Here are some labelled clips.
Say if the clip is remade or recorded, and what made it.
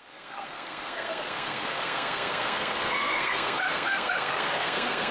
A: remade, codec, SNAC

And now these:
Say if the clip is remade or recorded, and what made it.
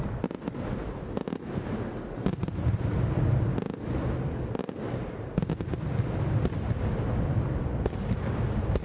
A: recorded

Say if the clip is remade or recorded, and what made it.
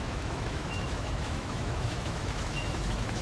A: remade, autoencoder, DAC-VAE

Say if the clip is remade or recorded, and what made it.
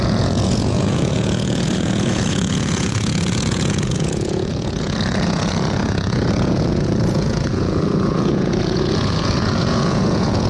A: remade, vocoder, Vocos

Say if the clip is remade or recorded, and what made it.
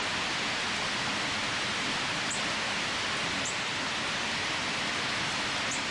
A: recorded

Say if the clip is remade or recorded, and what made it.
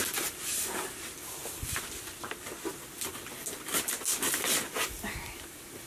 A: recorded